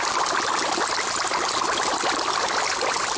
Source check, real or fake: real